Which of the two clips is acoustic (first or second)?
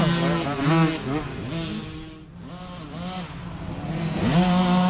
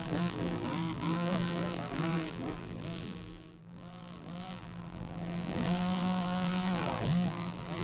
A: first